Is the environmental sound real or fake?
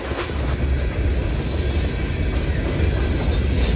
real